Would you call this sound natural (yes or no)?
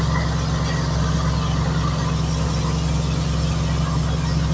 yes